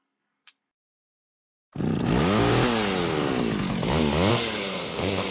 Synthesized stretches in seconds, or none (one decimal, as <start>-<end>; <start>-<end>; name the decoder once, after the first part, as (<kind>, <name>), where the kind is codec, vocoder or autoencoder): 0.0-1.6 (codec, SNAC); 4.3-5.3

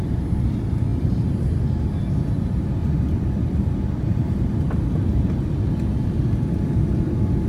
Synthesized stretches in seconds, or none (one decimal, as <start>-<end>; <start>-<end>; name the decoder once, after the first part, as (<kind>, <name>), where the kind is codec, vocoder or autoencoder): 2.8-4.8 (vocoder, BigVGAN v2)